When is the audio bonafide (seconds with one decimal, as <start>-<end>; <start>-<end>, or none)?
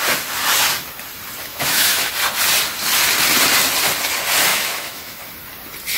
0.0-1.5; 2.1-4.5; 5.2-6.0